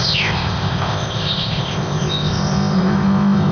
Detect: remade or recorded remade